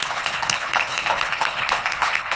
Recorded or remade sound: remade